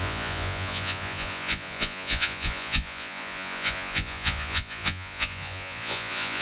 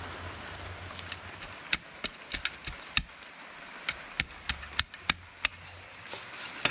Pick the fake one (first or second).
first